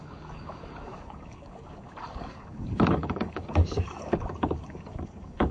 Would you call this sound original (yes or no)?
no